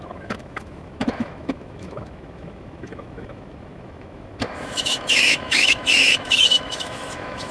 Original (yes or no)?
no